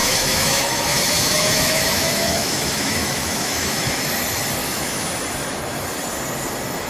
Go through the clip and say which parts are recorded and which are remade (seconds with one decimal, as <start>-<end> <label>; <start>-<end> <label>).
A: 0.0-4.1 remade; 4.1-4.6 recorded; 4.6-5.1 remade; 5.1-6.9 recorded